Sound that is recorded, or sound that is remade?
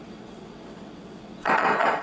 remade